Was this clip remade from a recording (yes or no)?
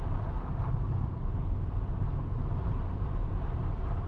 yes